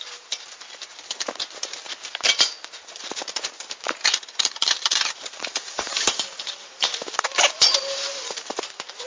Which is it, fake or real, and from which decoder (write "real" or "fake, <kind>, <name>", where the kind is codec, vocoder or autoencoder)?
fake, vocoder, BigVGAN v2